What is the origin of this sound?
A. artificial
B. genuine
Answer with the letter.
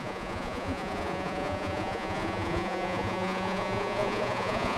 A